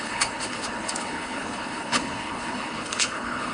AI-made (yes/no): yes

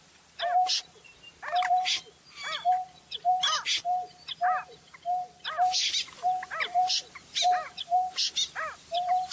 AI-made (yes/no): no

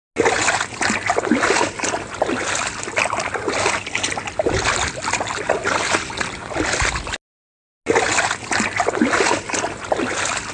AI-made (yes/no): no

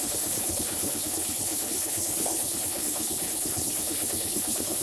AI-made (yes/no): yes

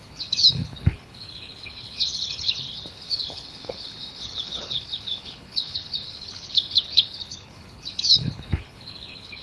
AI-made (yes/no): yes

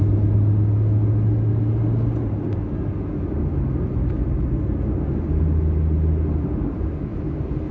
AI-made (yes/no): no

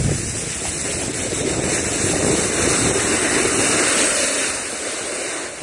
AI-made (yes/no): no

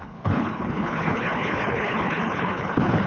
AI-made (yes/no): yes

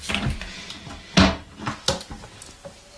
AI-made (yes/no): no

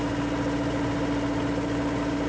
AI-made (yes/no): no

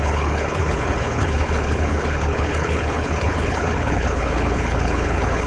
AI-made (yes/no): yes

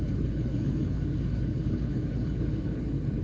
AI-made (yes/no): yes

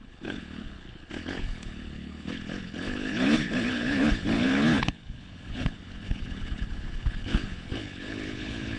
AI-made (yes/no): yes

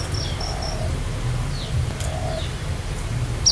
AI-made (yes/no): no